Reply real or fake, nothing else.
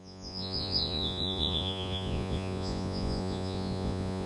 fake